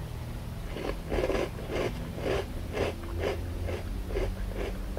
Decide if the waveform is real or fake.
real